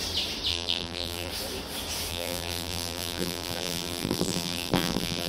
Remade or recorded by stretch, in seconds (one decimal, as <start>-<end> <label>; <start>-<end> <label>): 0.0-0.5 recorded; 0.5-1.3 remade; 1.3-2.1 recorded; 2.1-5.3 remade

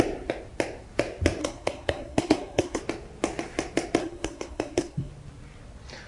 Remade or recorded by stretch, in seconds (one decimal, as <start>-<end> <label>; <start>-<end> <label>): 0.0-1.4 recorded; 1.4-2.8 remade; 2.8-4.0 recorded; 4.0-5.1 remade; 5.1-6.1 recorded

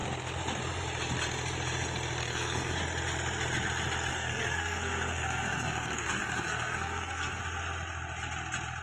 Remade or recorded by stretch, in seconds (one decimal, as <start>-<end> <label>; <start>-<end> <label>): 0.0-2.2 recorded; 2.2-2.7 remade; 2.7-4.1 recorded; 4.1-7.4 remade; 7.4-8.8 recorded

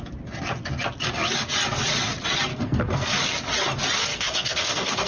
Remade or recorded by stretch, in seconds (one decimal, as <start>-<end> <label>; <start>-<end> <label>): 0.0-2.5 recorded; 2.5-3.1 remade; 3.1-4.1 recorded; 4.1-5.1 remade